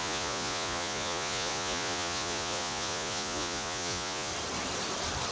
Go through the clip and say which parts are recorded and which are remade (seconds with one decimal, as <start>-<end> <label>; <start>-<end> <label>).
0.0-4.3 remade; 4.3-5.3 recorded